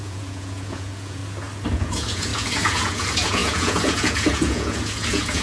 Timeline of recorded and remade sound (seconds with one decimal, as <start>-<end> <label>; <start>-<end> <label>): 0.0-1.2 remade; 1.2-1.7 recorded; 1.7-5.4 remade